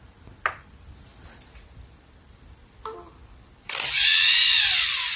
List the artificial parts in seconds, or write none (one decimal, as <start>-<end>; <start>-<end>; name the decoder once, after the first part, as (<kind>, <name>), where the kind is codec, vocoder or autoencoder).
0.0-5.2 (vocoder, BigVGAN v2)